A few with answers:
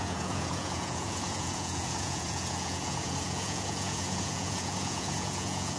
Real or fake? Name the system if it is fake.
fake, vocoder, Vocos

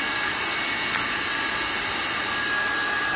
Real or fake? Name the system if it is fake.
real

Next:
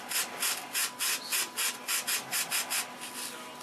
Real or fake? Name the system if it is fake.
real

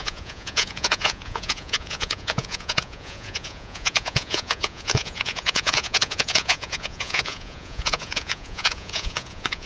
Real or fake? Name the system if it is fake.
fake, vocoder, Vocos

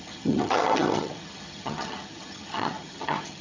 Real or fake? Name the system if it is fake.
fake, vocoder, HiFi-GAN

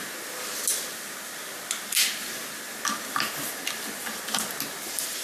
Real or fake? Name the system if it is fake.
real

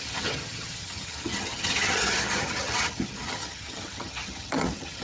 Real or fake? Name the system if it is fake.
fake, vocoder, HiFi-GAN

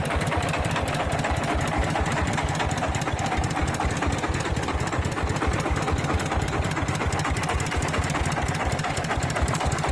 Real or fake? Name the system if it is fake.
fake, vocoder, BigVGAN v2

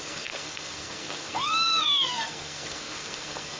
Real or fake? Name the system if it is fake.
fake, codec, SNAC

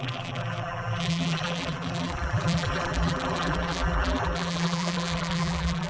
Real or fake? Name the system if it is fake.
fake, vocoder, BigVGAN v2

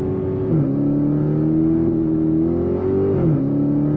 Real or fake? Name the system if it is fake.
real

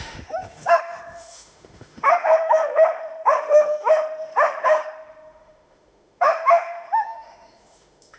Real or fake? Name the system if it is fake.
fake, autoencoder, DAC-VAE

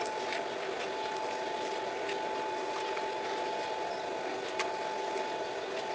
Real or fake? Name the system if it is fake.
real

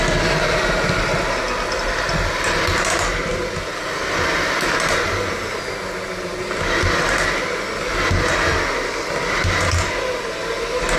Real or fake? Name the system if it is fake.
real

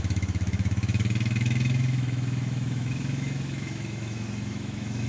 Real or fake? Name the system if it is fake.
fake, autoencoder, DAC-VAE